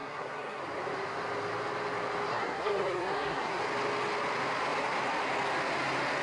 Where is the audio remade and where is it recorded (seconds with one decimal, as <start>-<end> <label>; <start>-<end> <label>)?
0.0-0.6 remade; 0.6-2.3 recorded; 2.3-3.6 remade; 3.6-6.2 recorded